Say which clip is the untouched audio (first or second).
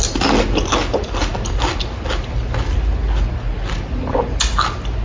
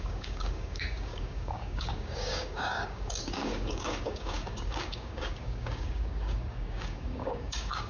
first